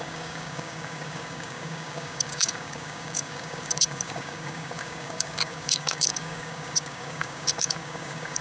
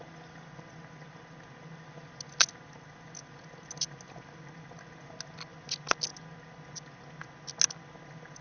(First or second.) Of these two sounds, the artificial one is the first